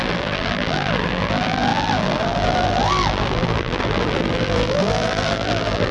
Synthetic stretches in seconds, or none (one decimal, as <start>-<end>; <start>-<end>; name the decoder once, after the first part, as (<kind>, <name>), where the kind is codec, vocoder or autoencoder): 0.0-5.9 (vocoder, BigVGAN v2)